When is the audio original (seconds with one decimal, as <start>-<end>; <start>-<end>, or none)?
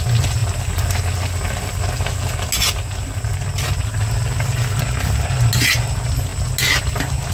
0.0-7.3